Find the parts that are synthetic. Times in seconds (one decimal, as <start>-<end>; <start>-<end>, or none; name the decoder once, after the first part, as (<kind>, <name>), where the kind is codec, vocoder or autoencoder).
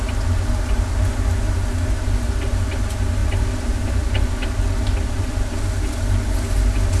none